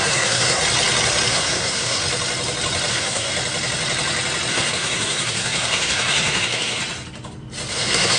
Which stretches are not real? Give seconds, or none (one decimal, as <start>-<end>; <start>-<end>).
0.0-0.6; 1.3-2.0; 2.9-3.3; 4.5-6.8; 7.7-8.2